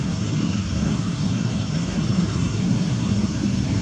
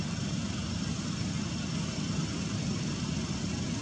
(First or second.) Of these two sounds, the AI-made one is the first